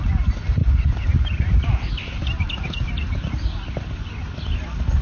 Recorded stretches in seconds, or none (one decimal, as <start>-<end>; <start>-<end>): 0.0-0.6; 3.3-5.0